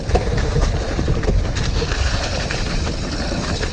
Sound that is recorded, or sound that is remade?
remade